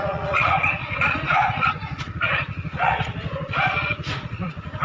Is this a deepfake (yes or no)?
yes